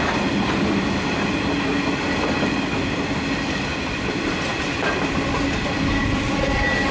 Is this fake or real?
real